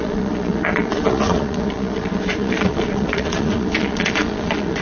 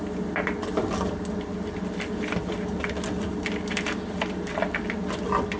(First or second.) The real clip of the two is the second